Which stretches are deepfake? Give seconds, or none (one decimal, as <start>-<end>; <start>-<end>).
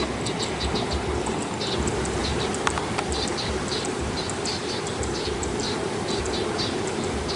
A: 2.2-6.2